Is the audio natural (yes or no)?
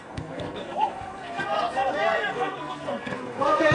no